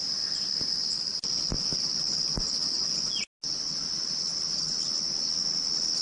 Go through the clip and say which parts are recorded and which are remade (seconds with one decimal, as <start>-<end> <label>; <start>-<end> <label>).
0.0-6.0 recorded